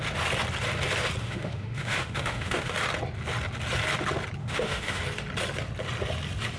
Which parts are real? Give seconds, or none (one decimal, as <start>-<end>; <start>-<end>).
0.0-1.2; 2.7-4.4; 5.0-6.6